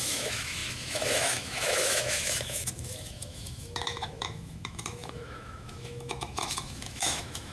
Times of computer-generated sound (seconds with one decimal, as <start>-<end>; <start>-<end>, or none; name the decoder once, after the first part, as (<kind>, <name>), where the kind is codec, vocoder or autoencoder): 0.0-7.5 (autoencoder, DAC-VAE)